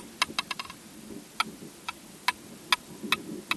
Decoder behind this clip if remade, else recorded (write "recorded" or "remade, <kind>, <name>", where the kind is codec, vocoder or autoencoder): recorded